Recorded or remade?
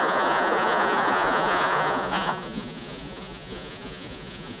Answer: remade